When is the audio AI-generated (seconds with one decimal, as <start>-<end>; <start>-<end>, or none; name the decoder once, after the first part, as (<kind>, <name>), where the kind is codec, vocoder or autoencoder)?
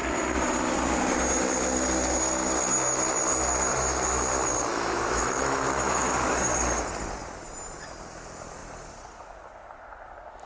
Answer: 4.7-6.1 (autoencoder, DAC-VAE)